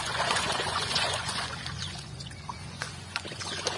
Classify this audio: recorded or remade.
remade